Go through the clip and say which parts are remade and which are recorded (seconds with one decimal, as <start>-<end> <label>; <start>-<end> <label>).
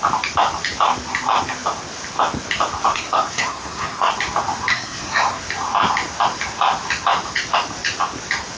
0.0-2.9 recorded; 2.9-4.1 remade; 4.1-4.7 recorded; 4.7-5.4 remade; 5.4-8.6 recorded